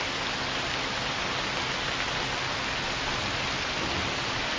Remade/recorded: recorded